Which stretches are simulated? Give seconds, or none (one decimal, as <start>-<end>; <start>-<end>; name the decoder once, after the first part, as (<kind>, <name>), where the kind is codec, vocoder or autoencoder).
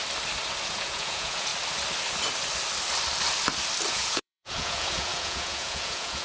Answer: 0.7-1.5 (vocoder, Vocos); 3.9-6.2